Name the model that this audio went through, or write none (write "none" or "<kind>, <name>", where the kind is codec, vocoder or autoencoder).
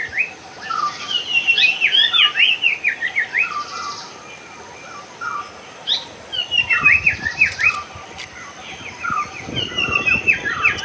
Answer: none